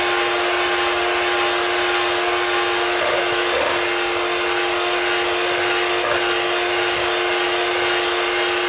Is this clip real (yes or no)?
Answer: yes